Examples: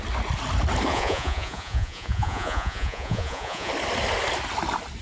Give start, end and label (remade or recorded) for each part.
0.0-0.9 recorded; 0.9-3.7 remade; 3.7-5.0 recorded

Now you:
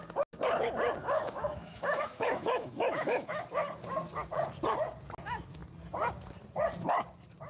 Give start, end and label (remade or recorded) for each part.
0.0-1.0 recorded; 1.0-3.4 remade; 3.4-7.5 recorded

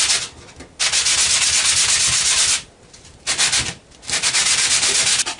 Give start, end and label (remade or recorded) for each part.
0.0-5.4 recorded